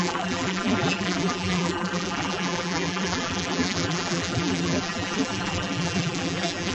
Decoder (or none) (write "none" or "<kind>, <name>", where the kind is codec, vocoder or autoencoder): vocoder, BigVGAN v2